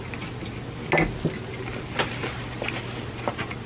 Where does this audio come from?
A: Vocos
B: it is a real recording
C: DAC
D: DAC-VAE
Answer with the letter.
B